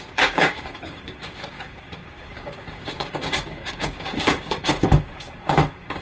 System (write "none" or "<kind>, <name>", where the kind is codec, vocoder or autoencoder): codec, DAC